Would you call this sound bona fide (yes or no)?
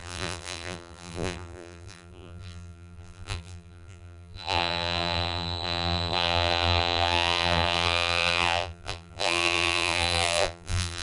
no